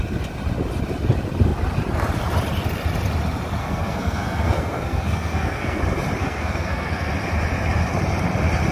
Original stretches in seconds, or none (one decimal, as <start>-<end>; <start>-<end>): 0.0-3.6; 5.8-6.2; 7.1-8.7